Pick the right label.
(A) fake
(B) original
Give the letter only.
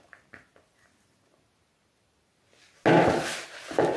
B